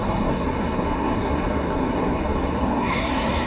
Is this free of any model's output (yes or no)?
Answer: no